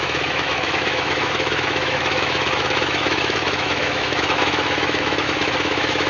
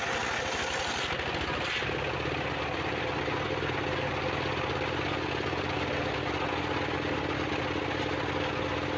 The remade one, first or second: first